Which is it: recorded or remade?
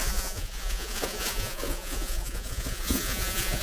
remade